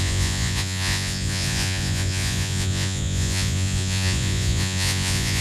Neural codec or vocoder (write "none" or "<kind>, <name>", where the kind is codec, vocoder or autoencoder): vocoder, Vocos